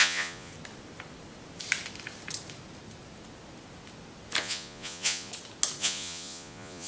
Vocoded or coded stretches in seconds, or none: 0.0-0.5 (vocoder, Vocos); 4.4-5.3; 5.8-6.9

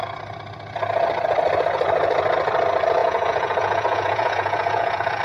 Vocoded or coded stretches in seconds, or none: 3.0-5.2 (vocoder, Vocos)

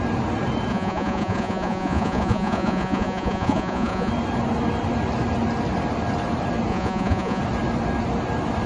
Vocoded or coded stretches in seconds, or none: 0.7-4.1 (vocoder, Vocos); 6.7-7.4

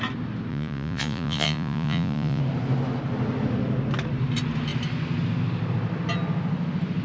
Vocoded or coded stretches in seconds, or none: 0.5-2.4 (vocoder, Vocos)

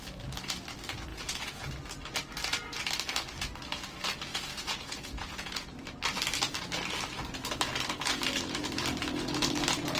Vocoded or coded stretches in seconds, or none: 1.1-1.7 (vocoder, Vocos); 4.3-5.8